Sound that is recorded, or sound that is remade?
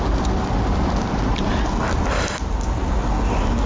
recorded